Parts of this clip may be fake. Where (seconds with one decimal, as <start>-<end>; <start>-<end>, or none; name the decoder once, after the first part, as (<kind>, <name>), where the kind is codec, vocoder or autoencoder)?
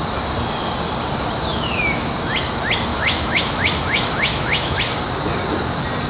1.5-2.1 (autoencoder, DAC-VAE); 2.9-4.8